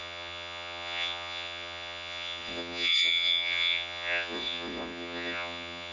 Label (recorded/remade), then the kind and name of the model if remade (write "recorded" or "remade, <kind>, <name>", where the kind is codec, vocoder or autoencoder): remade, vocoder, Vocos